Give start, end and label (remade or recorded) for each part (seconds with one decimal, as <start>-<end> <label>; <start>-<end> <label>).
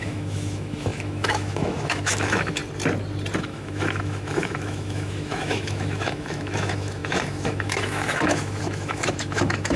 0.0-2.6 remade; 2.6-3.4 recorded; 3.4-9.8 remade